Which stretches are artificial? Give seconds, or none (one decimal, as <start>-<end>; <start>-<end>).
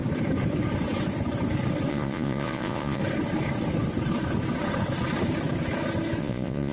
1.9-3.0; 6.2-6.7